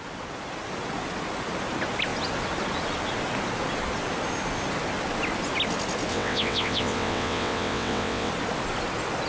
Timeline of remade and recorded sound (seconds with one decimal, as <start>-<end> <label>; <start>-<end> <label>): 0.0-6.1 recorded; 6.1-8.3 remade; 8.3-9.3 recorded